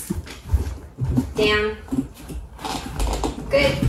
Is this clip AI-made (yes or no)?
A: no